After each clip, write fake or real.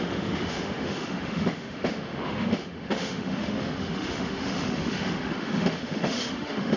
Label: fake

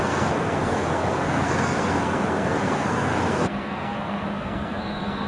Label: fake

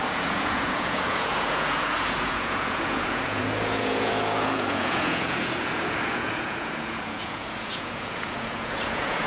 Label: fake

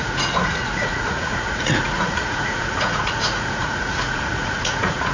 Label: fake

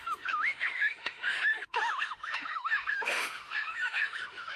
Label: fake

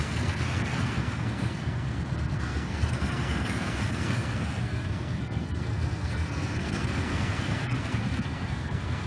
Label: fake